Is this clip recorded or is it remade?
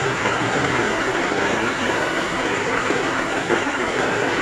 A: remade